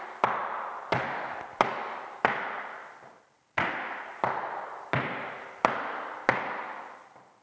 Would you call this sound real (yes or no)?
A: yes